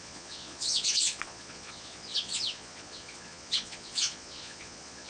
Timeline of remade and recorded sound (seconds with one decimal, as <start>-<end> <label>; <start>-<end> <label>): 0.0-5.1 remade